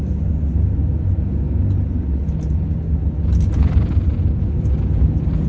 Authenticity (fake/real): real